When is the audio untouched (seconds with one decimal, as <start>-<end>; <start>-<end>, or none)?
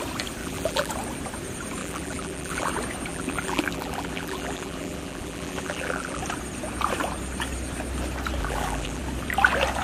0.0-0.4; 0.9-1.8; 2.7-3.1; 6.2-8.4; 9.0-9.8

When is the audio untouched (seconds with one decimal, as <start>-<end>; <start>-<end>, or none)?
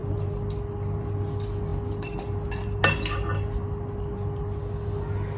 0.0-5.4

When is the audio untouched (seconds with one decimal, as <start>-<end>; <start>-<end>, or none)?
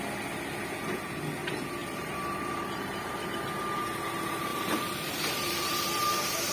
0.0-1.8; 3.1-4.5; 5.7-6.5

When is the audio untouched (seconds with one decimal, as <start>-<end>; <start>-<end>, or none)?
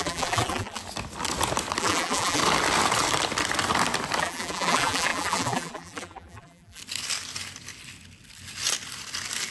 0.8-1.8; 2.4-4.2; 6.8-9.5